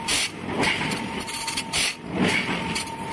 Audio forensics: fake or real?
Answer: real